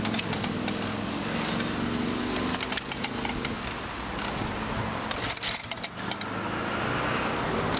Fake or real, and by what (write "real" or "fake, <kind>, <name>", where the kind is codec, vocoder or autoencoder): real